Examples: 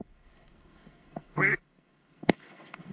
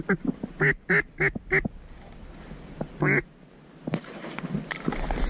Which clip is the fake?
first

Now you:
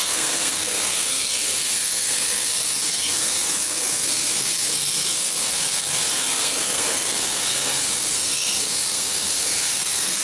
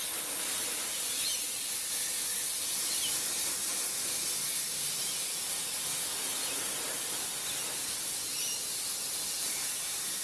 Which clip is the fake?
first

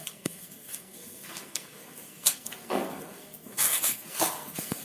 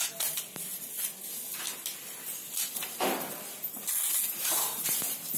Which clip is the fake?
first